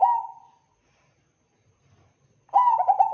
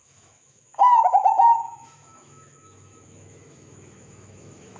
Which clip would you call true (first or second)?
first